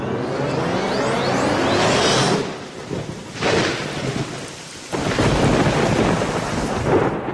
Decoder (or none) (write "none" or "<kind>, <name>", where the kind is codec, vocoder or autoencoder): none